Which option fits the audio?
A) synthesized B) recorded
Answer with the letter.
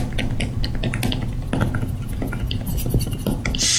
B